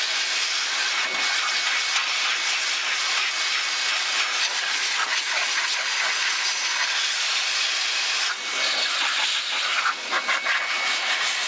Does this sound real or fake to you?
real